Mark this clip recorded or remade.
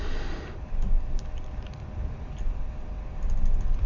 recorded